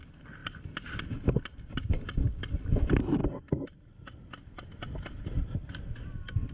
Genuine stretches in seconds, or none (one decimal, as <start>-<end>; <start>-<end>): 3.2-5.6